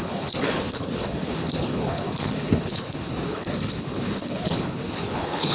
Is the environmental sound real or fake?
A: fake